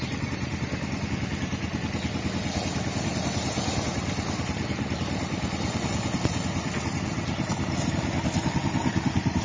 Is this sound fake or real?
real